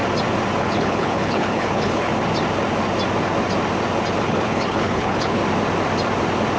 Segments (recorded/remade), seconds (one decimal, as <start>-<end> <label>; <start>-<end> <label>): 0.0-0.6 recorded; 0.6-2.1 remade; 2.1-4.2 recorded; 4.2-5.4 remade; 5.4-6.6 recorded